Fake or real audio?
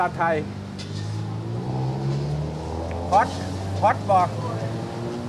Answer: real